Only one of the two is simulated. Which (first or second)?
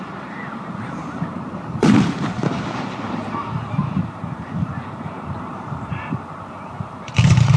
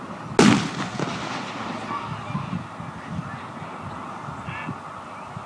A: first